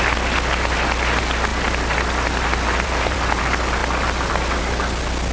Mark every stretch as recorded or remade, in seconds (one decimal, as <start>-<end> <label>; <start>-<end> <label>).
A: 0.0-1.5 recorded; 1.5-3.4 remade; 3.4-3.8 recorded; 3.8-4.6 remade; 4.6-5.3 recorded